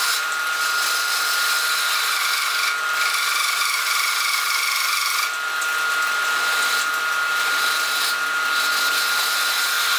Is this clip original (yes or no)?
yes